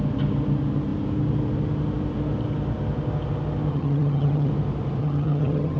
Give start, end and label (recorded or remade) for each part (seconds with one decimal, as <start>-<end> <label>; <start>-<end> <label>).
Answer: 0.0-3.7 recorded; 3.7-4.5 remade; 4.5-5.0 recorded; 5.0-5.8 remade